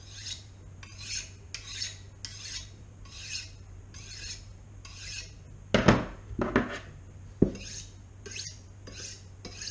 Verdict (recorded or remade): recorded